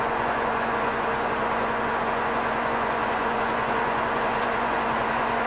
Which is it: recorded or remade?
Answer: remade